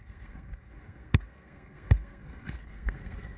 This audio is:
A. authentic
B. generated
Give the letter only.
B